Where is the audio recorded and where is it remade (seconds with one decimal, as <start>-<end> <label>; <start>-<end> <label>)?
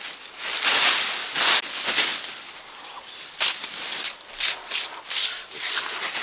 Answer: 0.0-6.2 recorded